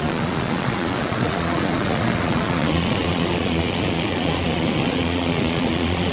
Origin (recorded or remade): remade